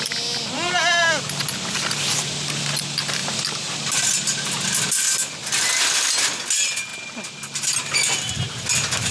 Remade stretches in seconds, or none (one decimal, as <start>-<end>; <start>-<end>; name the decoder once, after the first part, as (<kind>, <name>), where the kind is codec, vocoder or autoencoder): none